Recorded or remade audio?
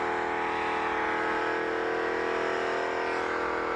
recorded